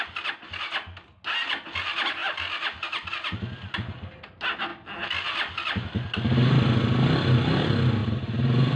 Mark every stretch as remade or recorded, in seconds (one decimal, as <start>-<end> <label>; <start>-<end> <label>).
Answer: 0.0-8.8 recorded